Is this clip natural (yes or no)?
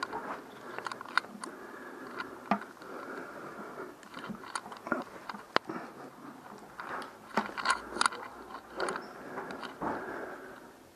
yes